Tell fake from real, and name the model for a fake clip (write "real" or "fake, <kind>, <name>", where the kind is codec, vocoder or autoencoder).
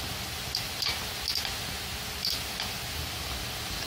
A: real